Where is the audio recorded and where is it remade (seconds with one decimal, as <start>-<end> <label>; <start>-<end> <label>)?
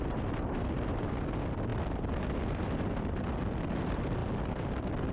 0.0-5.1 recorded